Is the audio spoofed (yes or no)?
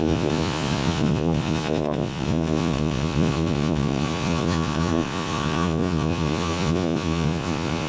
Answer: yes